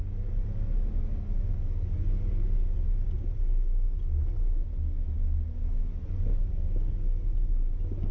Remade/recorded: recorded